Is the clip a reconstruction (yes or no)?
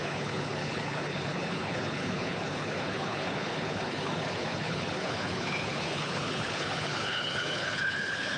yes